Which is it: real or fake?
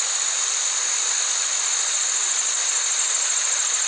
real